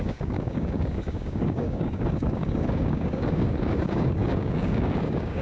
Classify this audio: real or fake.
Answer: fake